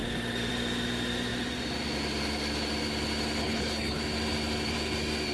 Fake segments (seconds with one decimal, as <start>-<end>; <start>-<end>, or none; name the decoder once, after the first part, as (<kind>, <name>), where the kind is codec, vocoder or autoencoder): 3.4-4.0 (codec, HILCodec)